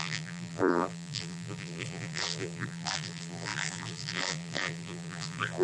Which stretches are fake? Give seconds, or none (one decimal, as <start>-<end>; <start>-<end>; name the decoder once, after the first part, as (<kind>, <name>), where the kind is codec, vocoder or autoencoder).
0.0-5.6 (vocoder, BigVGAN v2)